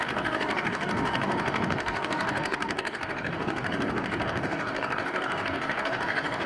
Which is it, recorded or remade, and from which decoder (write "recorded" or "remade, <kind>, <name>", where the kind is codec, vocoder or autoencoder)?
remade, codec, DAC